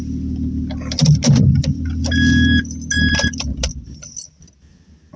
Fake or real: real